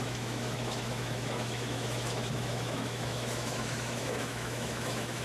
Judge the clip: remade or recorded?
remade